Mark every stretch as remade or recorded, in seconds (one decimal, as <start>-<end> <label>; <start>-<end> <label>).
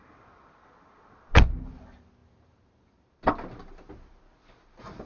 0.0-2.2 recorded; 2.2-3.3 remade; 3.3-5.1 recorded